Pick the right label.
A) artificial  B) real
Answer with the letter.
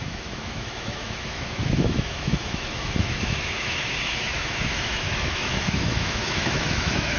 A